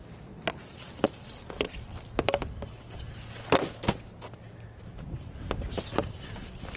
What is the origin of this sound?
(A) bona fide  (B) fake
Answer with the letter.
A